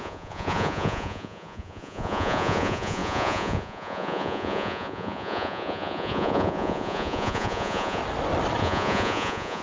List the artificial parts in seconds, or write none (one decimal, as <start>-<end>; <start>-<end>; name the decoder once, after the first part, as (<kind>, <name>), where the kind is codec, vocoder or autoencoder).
0.0-8.0 (vocoder, Vocos); 8.6-9.6